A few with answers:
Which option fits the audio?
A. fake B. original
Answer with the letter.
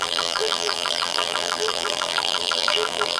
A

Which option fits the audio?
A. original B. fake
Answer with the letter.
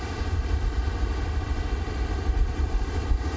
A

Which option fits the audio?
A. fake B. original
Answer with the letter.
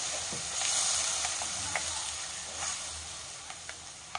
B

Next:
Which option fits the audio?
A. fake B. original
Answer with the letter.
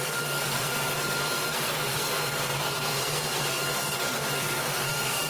A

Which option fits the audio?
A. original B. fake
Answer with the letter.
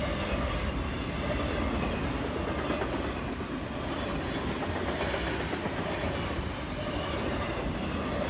A